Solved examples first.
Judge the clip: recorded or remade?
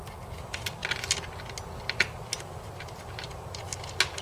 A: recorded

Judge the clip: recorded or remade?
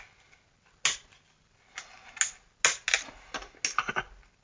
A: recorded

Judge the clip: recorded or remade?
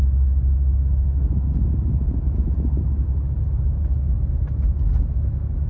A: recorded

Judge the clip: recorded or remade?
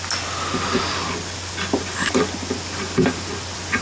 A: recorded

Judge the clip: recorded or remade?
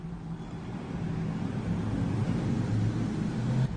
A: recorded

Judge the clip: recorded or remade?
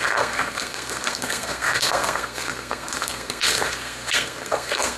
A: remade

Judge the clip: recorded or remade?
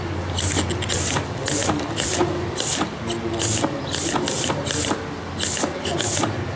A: recorded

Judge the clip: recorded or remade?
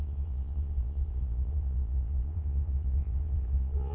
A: remade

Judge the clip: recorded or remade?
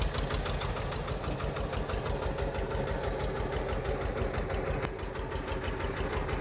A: recorded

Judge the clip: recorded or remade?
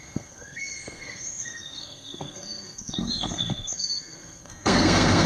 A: remade